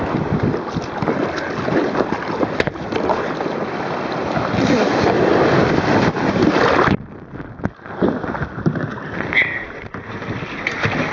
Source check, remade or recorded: recorded